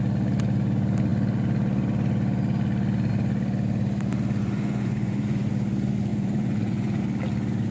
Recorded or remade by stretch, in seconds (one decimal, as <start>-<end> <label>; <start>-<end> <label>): 0.0-4.4 recorded; 4.4-5.5 remade; 5.5-6.1 recorded; 6.1-7.0 remade; 7.0-7.7 recorded

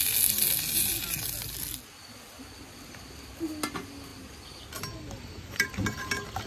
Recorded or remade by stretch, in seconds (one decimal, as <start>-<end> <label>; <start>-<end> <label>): 0.0-6.5 recorded

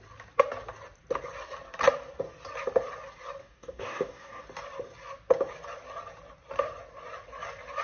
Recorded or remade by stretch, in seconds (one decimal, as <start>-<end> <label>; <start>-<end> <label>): 0.0-3.4 recorded; 3.4-4.4 remade; 4.4-7.8 recorded